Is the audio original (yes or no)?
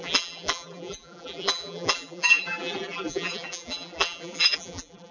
no